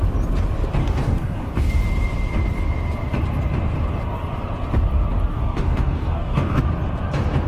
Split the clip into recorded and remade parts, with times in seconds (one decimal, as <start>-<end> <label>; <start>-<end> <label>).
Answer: 0.0-0.8 recorded; 0.8-1.7 remade; 1.7-5.3 recorded; 5.3-6.6 remade; 6.6-7.5 recorded